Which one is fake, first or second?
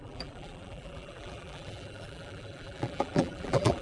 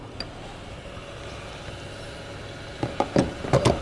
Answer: first